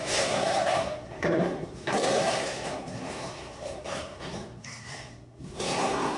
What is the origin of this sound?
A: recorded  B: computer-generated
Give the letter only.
B